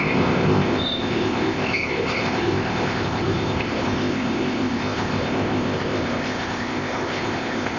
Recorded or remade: remade